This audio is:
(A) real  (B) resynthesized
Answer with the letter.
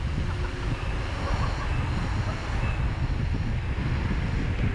A